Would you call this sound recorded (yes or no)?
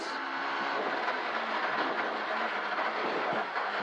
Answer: yes